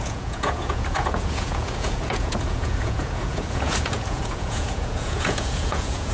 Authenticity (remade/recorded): remade